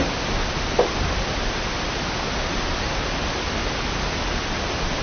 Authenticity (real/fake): real